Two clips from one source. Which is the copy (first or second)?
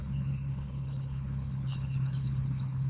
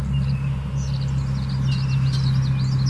first